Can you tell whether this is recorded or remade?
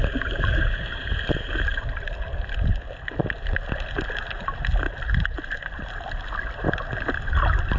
recorded